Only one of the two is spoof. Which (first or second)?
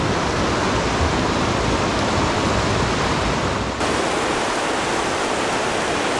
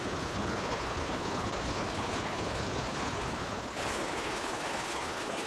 second